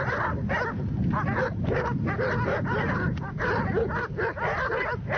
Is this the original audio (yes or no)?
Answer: yes